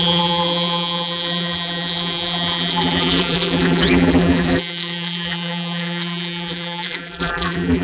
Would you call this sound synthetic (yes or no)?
yes